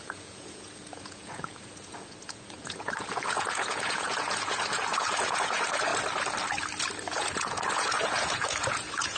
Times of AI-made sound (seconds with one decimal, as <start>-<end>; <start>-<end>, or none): 0.0-5.9; 7.1-9.2